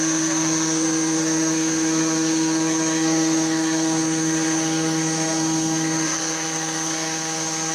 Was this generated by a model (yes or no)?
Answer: yes